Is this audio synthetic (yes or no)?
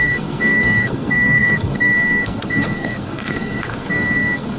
yes